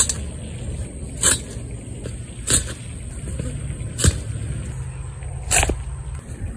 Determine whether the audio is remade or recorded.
recorded